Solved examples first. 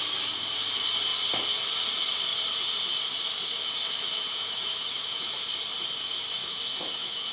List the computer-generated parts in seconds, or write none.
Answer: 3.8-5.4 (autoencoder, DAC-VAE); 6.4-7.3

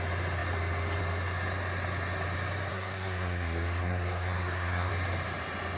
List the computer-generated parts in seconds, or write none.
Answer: 2.7-4.9 (codec, SNAC)

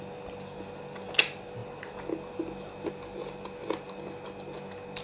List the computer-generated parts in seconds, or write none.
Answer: none

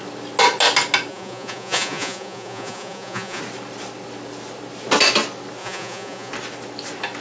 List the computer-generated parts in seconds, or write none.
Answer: 1.1-3.4 (vocoder, Vocos); 5.6-6.3

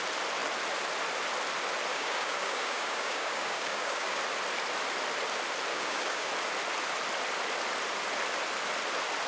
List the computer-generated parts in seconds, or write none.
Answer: 1.9-4.2 (codec, DAC); 5.7-6.3

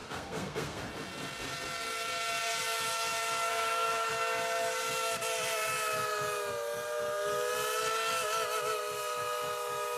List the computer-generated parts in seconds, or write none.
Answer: 0.0-0.8 (codec, SNAC); 3.5-4.1

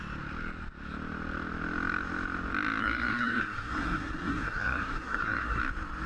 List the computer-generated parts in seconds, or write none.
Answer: 2.8-5.6 (codec, SNAC)